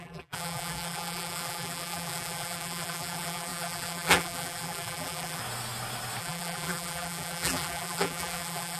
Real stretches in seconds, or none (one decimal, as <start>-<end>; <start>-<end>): 5.4-6.2